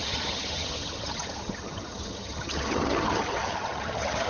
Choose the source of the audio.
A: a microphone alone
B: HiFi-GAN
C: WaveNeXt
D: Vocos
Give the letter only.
B